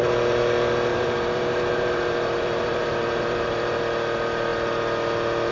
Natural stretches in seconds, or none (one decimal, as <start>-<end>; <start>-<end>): 0.0-0.9; 3.8-5.5